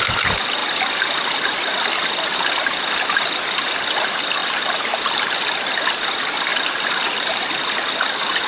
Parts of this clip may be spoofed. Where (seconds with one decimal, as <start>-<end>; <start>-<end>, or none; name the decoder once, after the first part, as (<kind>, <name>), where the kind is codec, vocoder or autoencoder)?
4.4-5.8 (vocoder, BigVGAN v2); 6.5-7.4